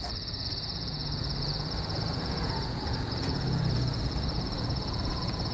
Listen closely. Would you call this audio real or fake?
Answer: fake